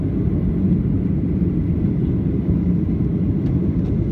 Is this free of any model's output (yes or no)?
yes